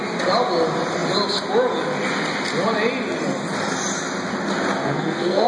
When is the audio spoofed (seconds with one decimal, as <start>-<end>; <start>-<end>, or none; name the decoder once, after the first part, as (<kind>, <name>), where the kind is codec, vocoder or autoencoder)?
4.8-5.5 (codec, SNAC)